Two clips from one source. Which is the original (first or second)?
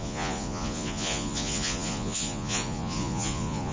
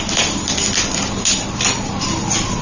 second